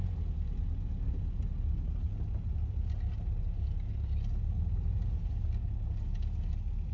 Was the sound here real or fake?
real